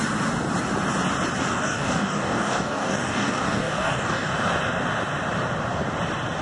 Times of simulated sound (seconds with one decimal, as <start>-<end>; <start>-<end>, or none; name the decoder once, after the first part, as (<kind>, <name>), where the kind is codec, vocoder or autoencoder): 1.5-4.3 (codec, DAC)